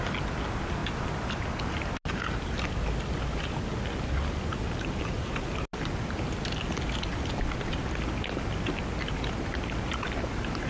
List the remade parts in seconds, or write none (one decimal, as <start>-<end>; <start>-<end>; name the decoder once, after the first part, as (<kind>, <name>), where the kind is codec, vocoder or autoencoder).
none